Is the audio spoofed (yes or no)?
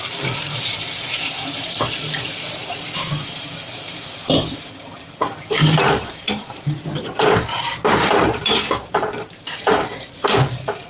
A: yes